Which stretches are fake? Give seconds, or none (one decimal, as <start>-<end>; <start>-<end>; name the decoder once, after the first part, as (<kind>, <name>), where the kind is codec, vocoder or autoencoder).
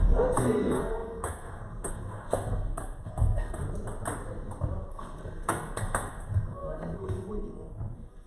0.0-3.6 (codec, SNAC); 4.9-8.3